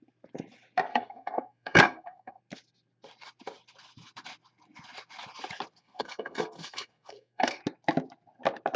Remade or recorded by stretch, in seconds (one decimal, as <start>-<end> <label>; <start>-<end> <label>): 0.0-0.9 recorded; 0.9-2.4 remade; 2.4-5.8 recorded; 5.8-7.6 remade; 7.6-8.8 recorded